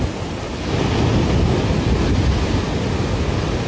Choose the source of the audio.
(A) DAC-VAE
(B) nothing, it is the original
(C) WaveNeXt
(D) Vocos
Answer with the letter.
B